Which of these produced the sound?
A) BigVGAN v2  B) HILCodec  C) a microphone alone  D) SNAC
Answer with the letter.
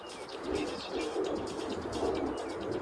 C